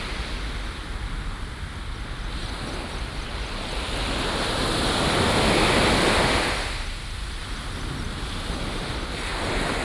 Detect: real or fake real